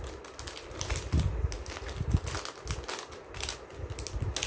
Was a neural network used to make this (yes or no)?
no